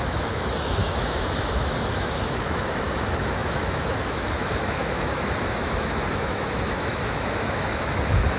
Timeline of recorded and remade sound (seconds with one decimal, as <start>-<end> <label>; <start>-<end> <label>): 0.0-8.4 remade